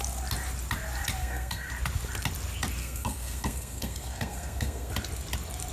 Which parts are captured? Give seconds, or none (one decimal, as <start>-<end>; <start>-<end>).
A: 0.0-1.2; 1.7-2.8; 4.9-5.7